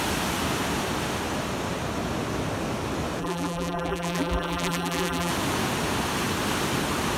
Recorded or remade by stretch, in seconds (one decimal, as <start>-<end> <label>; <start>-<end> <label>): 0.0-3.2 recorded; 3.2-5.3 remade; 5.3-7.2 recorded